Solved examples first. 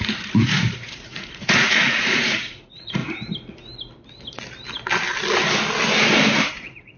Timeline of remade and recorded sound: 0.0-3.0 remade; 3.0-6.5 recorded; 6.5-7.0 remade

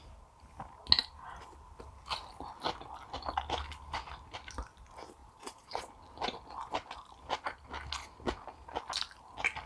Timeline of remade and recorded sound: 0.0-5.2 recorded; 5.2-5.9 remade; 5.9-9.7 recorded

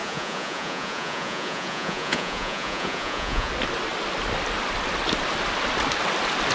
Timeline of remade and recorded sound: 0.0-3.5 remade; 3.5-6.5 recorded

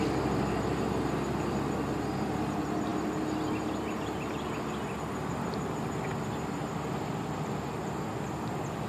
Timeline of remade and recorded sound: 0.0-8.9 recorded